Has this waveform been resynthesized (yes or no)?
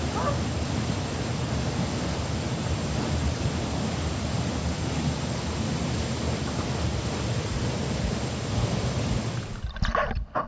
no